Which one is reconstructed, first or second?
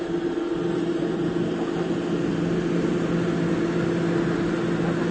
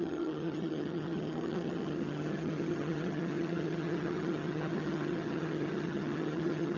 second